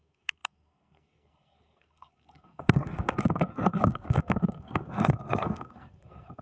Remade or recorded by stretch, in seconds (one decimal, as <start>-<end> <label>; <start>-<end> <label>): 0.0-6.4 remade